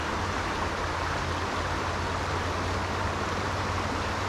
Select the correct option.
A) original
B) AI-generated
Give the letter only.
A